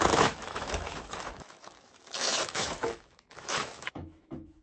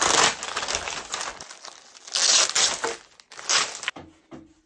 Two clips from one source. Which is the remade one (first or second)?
first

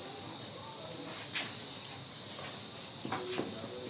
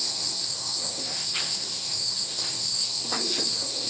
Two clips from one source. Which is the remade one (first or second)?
second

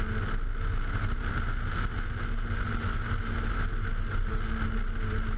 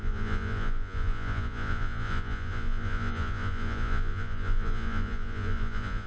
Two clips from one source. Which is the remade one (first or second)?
second